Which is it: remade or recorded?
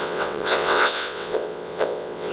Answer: remade